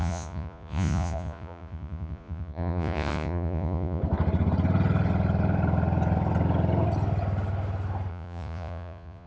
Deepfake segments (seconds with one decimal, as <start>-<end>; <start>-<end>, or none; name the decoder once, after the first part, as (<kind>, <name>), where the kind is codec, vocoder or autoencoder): 0.0-4.0 (vocoder, Vocos); 8.1-9.3